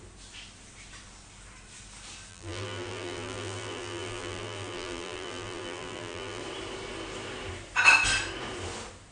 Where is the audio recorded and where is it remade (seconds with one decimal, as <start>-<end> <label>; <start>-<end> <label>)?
0.0-2.3 recorded; 2.3-6.4 remade; 6.4-9.1 recorded

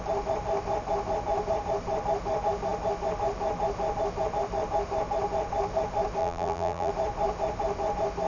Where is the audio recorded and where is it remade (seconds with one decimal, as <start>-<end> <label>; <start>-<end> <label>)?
0.0-6.2 recorded; 6.2-6.9 remade; 6.9-8.3 recorded